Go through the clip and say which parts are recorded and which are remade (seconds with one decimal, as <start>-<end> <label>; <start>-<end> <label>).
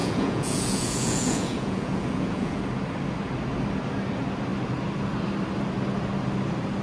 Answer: 0.0-2.6 remade; 2.6-6.8 recorded